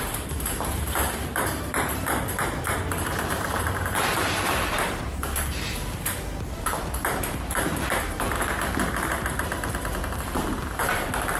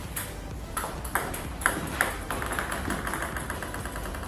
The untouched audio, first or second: second